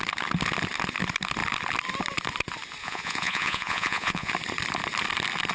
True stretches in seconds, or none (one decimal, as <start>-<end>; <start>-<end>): 0.0-2.8; 4.3-5.5